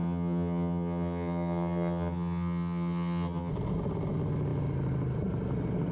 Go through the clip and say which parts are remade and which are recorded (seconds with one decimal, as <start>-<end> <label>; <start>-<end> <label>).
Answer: 0.0-3.5 remade; 3.5-5.9 recorded